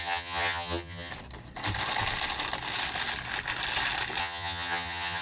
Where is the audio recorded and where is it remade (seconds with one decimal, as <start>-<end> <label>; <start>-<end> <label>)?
0.0-1.1 remade; 1.1-4.2 recorded; 4.2-5.2 remade

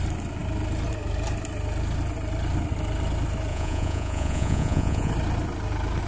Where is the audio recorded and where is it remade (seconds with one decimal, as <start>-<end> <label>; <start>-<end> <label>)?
0.0-3.5 recorded; 3.5-5.1 remade; 5.1-6.1 recorded

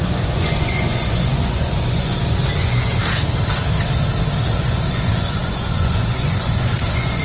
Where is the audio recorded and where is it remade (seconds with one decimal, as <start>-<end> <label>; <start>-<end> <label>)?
0.0-3.0 remade; 3.0-4.5 recorded; 4.5-7.2 remade

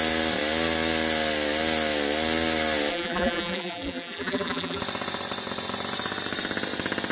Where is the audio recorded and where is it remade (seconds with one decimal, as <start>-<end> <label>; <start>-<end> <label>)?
0.0-2.9 recorded; 2.9-4.8 remade; 4.8-7.1 recorded